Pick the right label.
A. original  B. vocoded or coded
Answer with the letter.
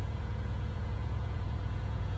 B